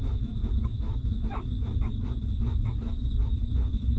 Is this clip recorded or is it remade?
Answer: remade